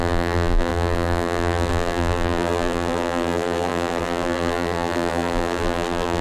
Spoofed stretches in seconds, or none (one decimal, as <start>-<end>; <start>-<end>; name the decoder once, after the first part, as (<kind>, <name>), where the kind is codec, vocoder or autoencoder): 0.0-6.2 (vocoder, BigVGAN v2)